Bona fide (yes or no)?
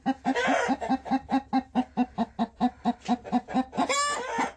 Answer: yes